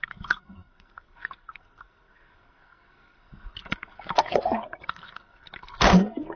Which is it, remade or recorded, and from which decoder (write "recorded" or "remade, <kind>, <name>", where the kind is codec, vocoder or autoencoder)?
remade, codec, SNAC